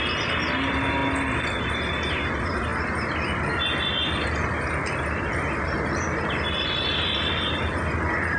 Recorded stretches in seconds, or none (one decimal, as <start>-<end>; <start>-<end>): 0.0-8.4